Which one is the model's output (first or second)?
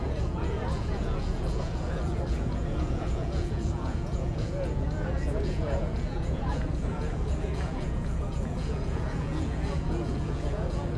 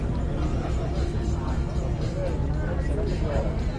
first